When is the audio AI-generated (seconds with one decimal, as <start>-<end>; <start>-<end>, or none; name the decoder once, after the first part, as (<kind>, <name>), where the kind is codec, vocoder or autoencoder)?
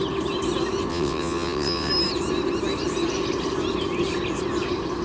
0.9-1.9 (vocoder, WaveNeXt)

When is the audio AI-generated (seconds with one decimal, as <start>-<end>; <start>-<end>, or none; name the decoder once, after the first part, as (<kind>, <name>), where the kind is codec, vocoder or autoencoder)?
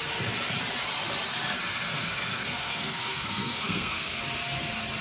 1.9-4.2 (codec, SNAC)